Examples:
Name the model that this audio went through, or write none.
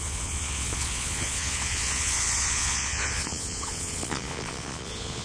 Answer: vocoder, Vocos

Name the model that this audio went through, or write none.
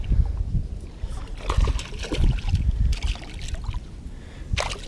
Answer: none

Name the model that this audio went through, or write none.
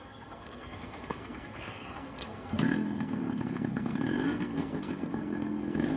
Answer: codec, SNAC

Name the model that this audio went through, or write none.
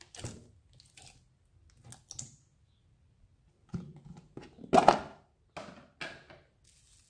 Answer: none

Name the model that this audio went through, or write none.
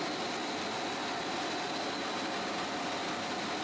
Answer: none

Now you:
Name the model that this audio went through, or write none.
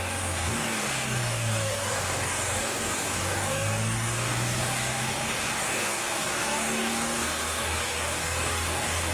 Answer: codec, DAC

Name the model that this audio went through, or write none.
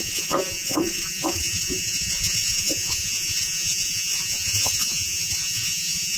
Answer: vocoder, Vocos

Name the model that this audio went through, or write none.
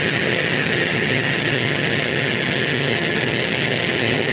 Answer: vocoder, HiFi-GAN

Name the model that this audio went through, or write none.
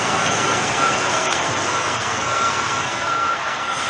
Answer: codec, SNAC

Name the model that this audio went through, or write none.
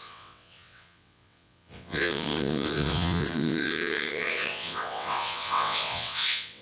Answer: vocoder, WaveNeXt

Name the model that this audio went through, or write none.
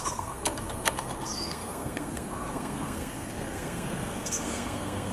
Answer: codec, SNAC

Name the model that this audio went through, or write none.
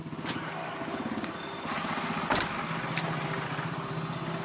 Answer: none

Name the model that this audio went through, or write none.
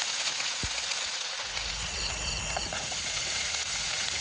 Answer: vocoder, Vocos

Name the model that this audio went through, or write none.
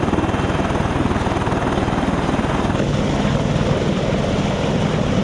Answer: none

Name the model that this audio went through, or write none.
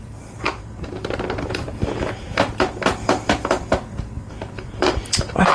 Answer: vocoder, BigVGAN v2